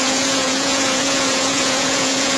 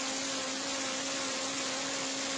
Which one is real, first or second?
second